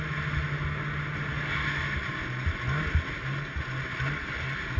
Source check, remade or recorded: recorded